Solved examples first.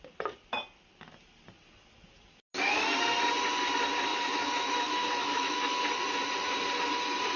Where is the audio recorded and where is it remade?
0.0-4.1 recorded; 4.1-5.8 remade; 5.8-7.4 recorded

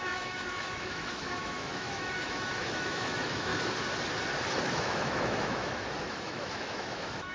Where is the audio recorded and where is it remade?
0.0-3.5 remade; 3.5-4.6 recorded; 4.6-7.3 remade

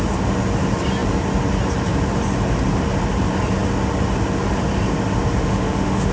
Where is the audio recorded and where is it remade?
0.0-5.4 recorded; 5.4-6.1 remade

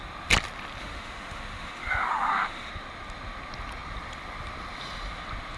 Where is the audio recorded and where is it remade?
0.0-0.8 recorded; 0.8-2.7 remade; 2.7-5.6 recorded

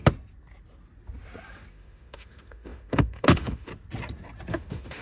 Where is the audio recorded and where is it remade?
0.0-1.7 recorded; 1.7-3.7 remade; 3.7-4.5 recorded; 4.5-5.0 remade

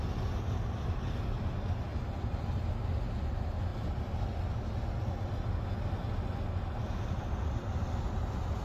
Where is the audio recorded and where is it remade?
0.0-8.6 recorded

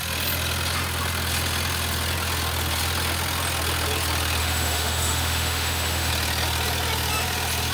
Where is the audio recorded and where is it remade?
0.0-4.4 recorded; 4.4-6.1 remade; 6.1-7.7 recorded